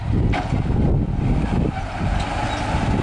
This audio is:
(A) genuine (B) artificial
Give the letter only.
A